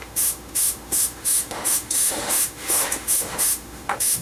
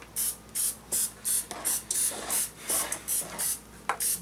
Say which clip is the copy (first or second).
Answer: first